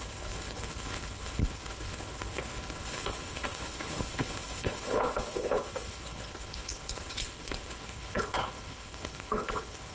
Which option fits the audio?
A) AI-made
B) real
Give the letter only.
A